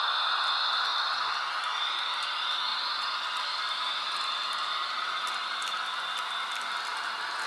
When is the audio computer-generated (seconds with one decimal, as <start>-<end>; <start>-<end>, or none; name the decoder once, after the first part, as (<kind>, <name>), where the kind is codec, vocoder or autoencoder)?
0.9-1.4 (vocoder, BigVGAN v2); 2.7-3.4; 4.8-6.8